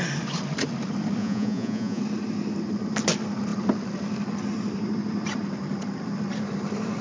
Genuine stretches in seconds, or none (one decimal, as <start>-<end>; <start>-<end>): 0.0-1.2; 2.0-7.0